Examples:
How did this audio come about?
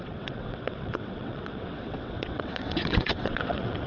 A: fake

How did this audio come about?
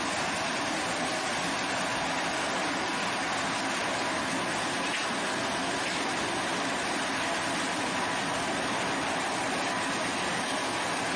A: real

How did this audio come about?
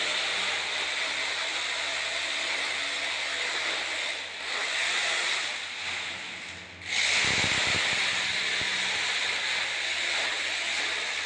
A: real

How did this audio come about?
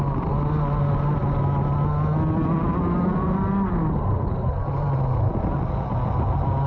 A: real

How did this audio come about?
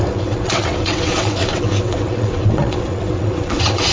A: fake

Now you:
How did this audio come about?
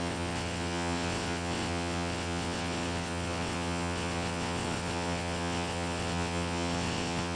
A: fake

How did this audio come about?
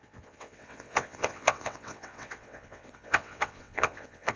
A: fake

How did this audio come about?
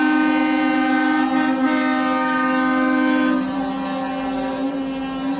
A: real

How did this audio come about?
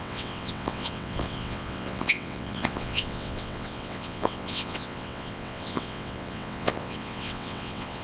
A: fake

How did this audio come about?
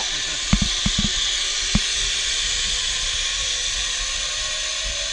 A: real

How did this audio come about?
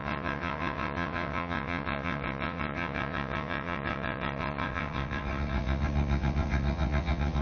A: fake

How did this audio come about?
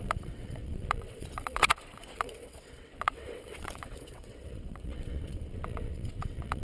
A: fake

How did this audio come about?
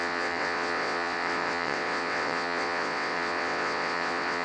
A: fake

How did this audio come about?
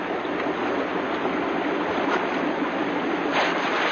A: real